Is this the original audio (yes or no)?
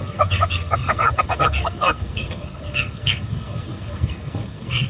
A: no